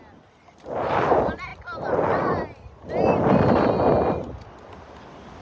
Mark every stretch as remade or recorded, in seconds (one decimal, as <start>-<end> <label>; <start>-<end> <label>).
0.0-5.4 recorded